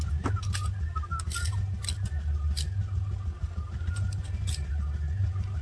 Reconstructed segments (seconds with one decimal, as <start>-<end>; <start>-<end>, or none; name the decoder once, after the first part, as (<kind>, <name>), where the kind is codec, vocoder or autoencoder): none

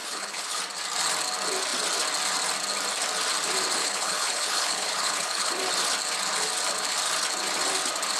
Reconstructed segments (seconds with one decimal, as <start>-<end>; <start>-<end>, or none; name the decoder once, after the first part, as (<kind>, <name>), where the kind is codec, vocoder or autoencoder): 0.0-0.6 (codec, HILCodec); 3.8-5.5

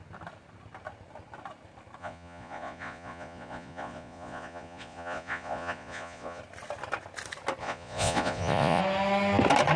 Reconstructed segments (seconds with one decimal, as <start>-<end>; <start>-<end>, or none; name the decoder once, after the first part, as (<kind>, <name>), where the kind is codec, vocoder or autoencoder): 2.0-6.4 (vocoder, Vocos); 7.6-8.8

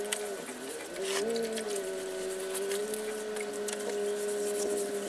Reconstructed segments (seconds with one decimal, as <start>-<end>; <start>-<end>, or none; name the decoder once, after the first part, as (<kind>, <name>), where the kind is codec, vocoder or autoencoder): none

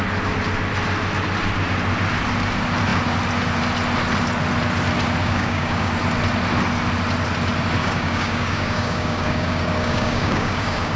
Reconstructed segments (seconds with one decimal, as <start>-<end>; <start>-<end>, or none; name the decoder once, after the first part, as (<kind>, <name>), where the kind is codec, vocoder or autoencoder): 5.2-5.9 (codec, DAC); 7.8-11.0

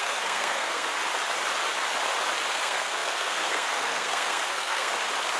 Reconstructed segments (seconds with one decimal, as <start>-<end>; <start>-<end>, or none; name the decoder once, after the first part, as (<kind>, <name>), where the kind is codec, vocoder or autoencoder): 0.0-1.0 (codec, SNAC); 2.5-4.9

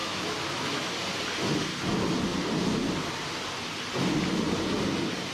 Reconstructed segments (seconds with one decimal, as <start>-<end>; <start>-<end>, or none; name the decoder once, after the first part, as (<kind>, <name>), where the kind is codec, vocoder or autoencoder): 0.0-0.9 (autoencoder, DAC-VAE)

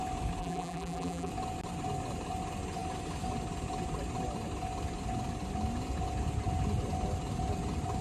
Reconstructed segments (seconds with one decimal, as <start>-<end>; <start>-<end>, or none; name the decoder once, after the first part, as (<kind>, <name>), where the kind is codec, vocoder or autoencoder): 0.4-1.3 (vocoder, BigVGAN v2)